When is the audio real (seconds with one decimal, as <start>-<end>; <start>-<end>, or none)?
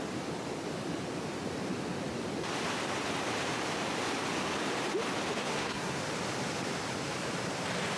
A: 0.0-5.4; 6.0-8.0